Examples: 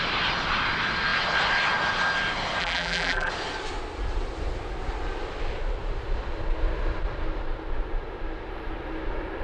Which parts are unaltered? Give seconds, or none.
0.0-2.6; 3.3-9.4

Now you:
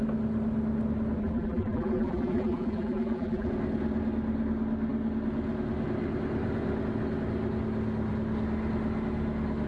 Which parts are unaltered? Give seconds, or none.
0.0-1.2; 3.5-9.7

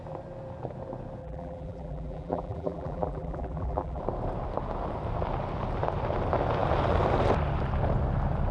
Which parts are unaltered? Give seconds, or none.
0.0-1.2; 4.0-8.5

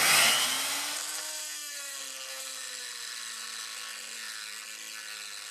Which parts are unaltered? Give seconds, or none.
0.0-5.5

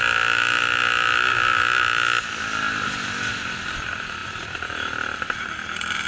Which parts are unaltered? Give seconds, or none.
0.8-3.3

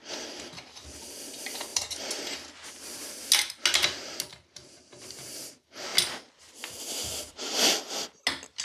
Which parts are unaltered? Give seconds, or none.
0.0-1.7; 3.0-4.3; 5.5-8.6

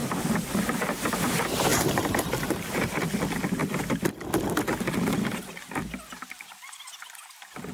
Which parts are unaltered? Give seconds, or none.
0.0-1.7; 2.7-7.7